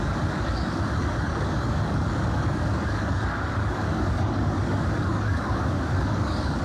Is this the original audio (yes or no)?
no